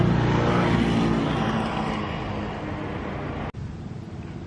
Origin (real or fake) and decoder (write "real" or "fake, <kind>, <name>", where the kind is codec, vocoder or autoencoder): real